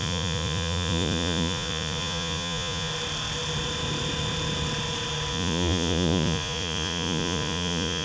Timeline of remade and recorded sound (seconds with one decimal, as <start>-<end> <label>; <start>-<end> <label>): 0.0-2.9 remade; 2.9-5.3 recorded; 5.3-8.0 remade